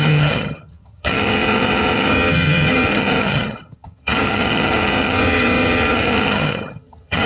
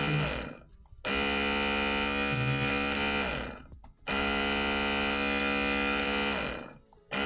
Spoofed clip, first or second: first